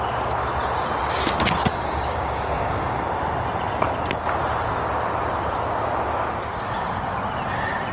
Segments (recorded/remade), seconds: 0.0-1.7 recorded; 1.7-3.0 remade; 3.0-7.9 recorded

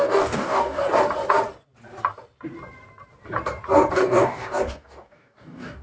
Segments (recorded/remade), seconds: 0.0-0.8 remade; 0.8-3.9 recorded; 3.9-5.8 remade

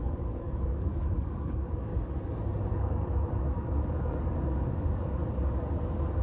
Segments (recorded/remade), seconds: 0.0-1.9 remade; 1.9-2.7 recorded; 2.7-5.2 remade; 5.2-6.2 recorded

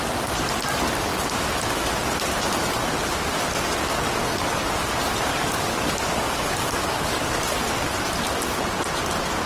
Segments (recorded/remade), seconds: 0.0-5.3 recorded; 5.3-7.4 remade; 7.4-9.5 recorded